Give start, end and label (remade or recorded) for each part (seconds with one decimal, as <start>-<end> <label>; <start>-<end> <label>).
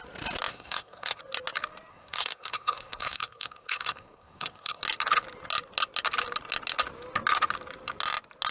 0.0-0.5 recorded; 0.5-1.2 remade; 1.2-1.9 recorded; 1.9-4.8 remade; 4.8-8.5 recorded